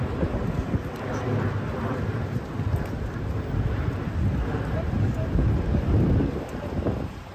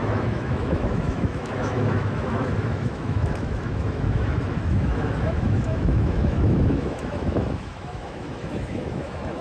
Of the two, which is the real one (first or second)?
first